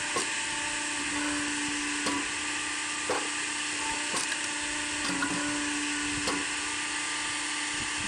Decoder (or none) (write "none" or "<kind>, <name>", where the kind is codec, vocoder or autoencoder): none